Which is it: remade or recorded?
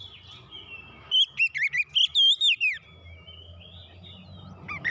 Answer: recorded